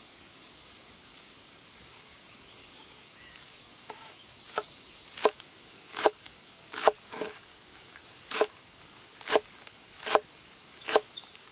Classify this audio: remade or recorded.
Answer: remade